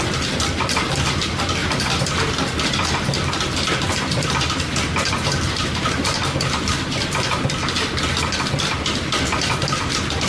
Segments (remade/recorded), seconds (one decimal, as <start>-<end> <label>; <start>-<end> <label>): 0.0-10.3 recorded